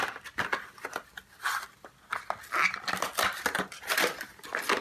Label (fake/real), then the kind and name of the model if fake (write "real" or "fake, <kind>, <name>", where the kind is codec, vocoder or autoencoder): real